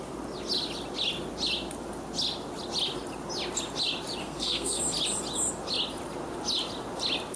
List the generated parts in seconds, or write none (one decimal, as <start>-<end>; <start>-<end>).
4.2-4.8